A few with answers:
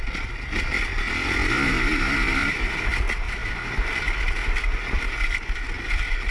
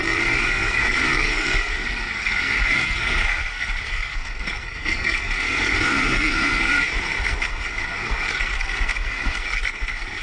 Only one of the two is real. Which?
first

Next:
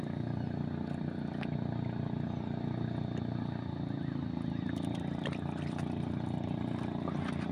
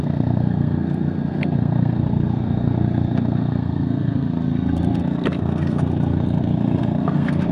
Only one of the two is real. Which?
first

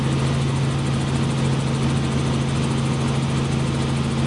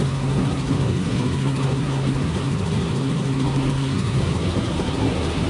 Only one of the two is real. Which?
first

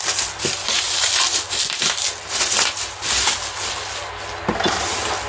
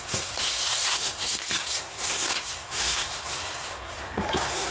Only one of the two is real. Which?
first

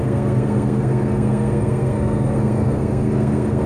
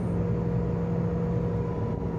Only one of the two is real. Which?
second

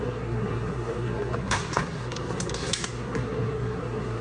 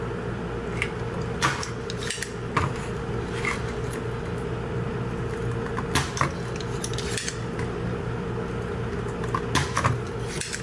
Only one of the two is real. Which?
second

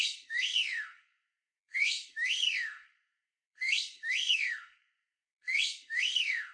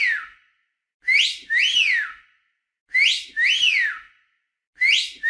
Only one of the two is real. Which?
second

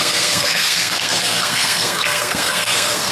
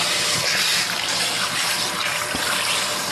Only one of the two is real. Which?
second